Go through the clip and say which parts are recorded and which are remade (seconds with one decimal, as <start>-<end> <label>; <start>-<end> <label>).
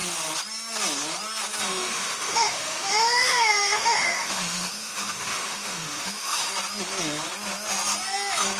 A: 0.0-1.7 recorded; 1.7-6.5 remade; 6.5-8.6 recorded